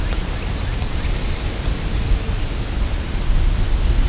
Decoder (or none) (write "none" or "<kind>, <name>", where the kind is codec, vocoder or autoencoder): none